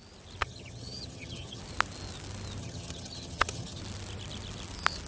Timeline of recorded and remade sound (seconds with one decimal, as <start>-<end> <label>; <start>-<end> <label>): 0.0-0.4 recorded; 0.4-1.6 remade; 1.6-2.6 recorded; 2.6-3.8 remade; 3.8-5.1 recorded